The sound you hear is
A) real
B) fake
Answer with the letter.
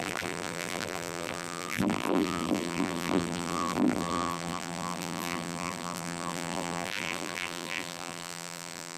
B